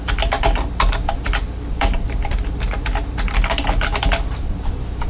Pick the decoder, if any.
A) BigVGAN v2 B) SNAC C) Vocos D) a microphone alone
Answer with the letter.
A